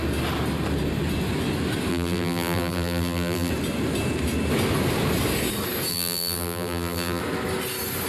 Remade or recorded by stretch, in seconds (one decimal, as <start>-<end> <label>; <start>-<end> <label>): 0.0-1.9 recorded; 1.9-3.5 remade; 3.5-5.9 recorded; 5.9-7.2 remade; 7.2-8.1 recorded